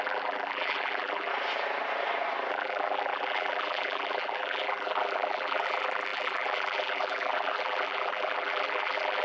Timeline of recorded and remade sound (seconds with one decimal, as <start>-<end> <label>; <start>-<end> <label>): 0.0-1.3 remade; 1.3-2.5 recorded; 2.5-9.2 remade